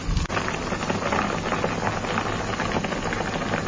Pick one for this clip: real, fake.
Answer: real